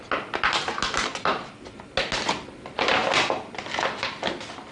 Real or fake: real